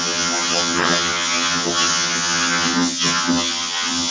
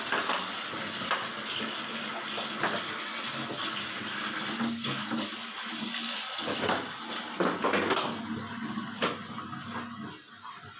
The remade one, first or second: first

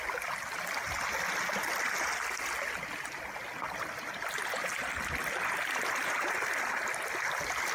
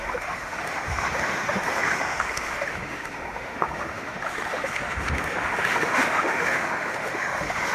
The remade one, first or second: second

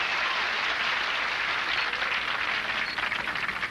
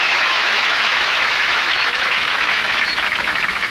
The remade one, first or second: second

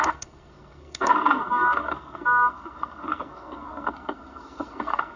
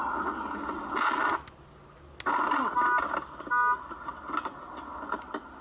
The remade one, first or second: first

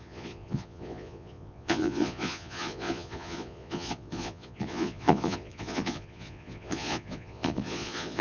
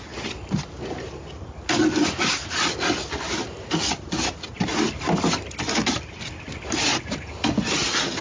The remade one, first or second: first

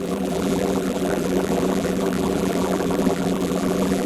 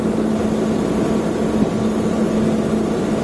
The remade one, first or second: first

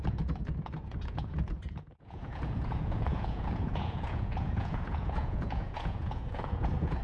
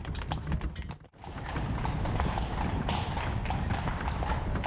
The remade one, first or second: first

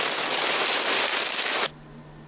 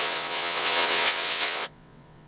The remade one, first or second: second